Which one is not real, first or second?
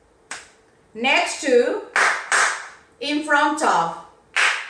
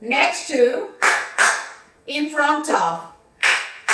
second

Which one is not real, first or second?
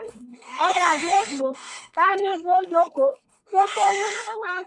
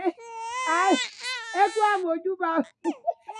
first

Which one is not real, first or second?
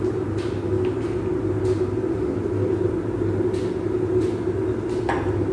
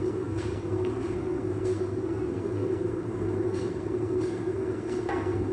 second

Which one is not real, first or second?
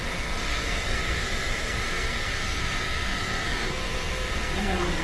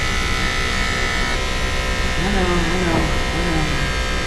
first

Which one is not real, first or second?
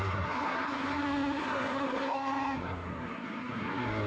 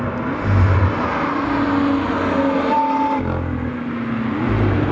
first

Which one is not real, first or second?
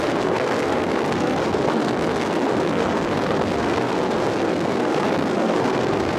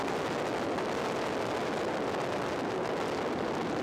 first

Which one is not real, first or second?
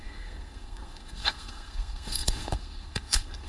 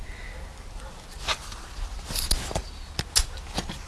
first